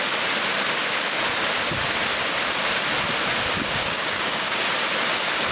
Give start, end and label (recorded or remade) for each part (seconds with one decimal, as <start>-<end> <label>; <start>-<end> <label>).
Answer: 0.0-3.8 recorded; 3.8-4.6 remade; 4.6-5.5 recorded